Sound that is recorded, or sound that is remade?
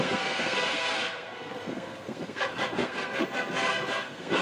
remade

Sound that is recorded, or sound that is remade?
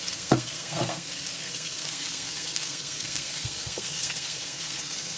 remade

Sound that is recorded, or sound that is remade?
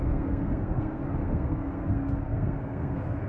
remade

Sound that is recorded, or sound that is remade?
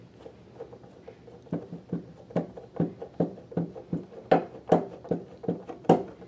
recorded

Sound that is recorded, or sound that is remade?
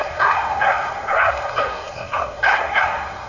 remade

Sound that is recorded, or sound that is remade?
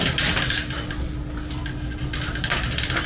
recorded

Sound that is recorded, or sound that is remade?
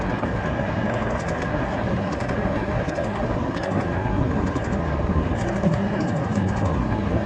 remade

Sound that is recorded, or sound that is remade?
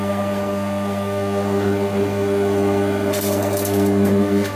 remade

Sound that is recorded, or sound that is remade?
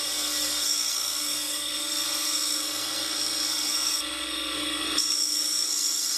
remade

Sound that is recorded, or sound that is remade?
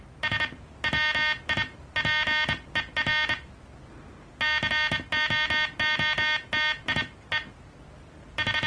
recorded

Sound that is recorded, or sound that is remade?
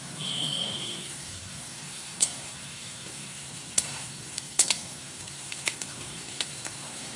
remade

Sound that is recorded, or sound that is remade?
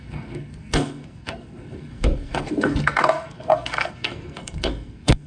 remade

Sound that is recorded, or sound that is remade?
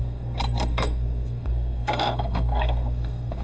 remade